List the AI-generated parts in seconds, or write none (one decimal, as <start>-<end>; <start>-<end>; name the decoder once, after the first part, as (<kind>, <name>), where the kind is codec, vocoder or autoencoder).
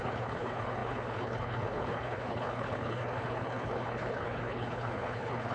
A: 0.0-5.5 (codec, HILCodec)